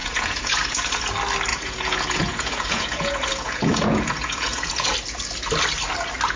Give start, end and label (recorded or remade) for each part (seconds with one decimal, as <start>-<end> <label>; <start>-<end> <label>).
0.0-1.0 remade; 1.0-1.5 recorded; 1.5-4.9 remade; 4.9-6.4 recorded